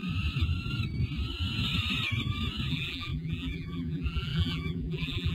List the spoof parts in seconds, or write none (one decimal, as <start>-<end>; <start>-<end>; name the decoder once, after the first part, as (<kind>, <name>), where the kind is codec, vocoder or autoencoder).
2.7-5.3 (vocoder, BigVGAN v2)